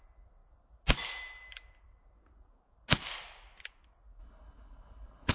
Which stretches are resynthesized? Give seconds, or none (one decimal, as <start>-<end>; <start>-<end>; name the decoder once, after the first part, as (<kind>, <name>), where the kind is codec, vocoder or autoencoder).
4.2-5.3 (codec, HILCodec)